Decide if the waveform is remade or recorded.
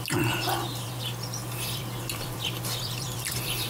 remade